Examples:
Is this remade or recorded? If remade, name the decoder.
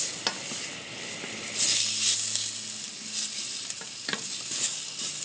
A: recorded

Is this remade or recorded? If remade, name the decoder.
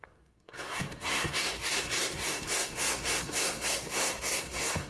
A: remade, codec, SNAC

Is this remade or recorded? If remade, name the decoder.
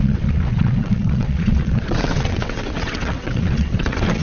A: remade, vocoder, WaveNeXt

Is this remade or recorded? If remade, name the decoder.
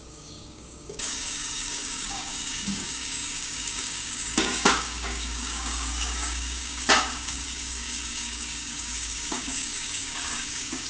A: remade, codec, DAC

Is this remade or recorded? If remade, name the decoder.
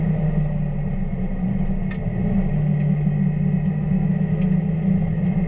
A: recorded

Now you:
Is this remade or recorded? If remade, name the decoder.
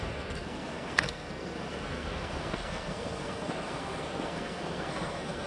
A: remade, codec, SNAC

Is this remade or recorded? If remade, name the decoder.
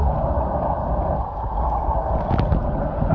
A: recorded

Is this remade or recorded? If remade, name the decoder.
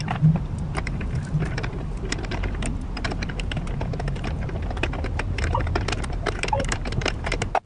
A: remade, vocoder, BigVGAN v2